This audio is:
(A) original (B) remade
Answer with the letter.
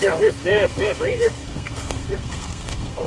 B